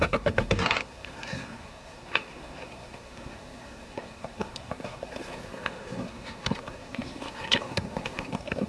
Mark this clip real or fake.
fake